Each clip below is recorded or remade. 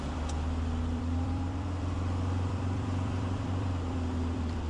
remade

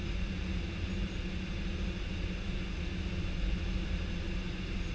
recorded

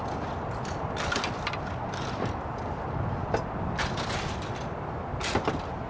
recorded